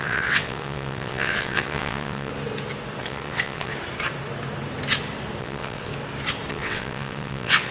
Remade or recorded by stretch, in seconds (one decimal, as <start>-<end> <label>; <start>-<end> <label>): 0.0-2.3 remade; 2.3-3.0 recorded; 3.0-3.7 remade; 3.7-5.4 recorded; 5.4-5.9 remade; 5.9-6.5 recorded; 6.5-7.7 remade